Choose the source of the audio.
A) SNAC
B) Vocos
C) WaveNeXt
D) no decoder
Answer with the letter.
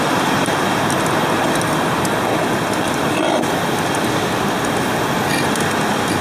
D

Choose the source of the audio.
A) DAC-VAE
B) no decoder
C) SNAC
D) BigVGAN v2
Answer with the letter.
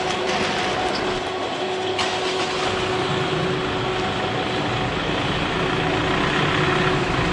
B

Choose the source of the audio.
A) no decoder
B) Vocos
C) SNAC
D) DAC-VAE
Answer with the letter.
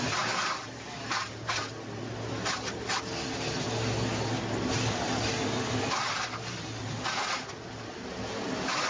A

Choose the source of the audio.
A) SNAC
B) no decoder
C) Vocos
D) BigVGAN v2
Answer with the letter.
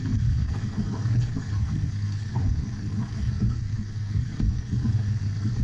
A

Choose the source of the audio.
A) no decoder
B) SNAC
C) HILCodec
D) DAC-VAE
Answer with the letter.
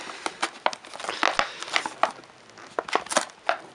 A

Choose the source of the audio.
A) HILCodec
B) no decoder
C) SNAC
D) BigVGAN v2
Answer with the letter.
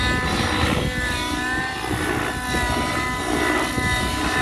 B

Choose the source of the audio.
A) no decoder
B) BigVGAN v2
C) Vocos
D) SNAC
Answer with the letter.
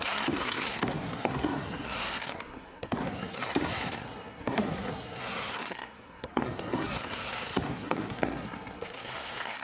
D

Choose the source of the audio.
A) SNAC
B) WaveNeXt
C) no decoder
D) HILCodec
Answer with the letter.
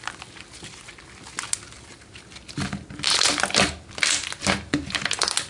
C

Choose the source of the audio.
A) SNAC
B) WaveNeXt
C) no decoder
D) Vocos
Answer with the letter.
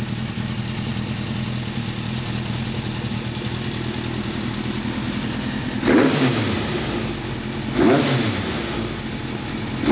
C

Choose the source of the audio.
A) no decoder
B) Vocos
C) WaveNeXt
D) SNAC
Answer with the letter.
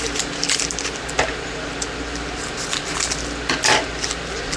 A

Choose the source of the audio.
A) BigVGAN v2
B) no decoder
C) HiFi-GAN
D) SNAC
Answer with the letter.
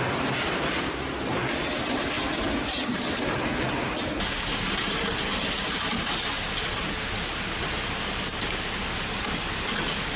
B